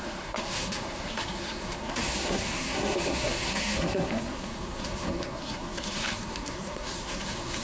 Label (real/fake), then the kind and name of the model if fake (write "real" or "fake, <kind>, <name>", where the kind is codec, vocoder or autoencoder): fake, codec, SNAC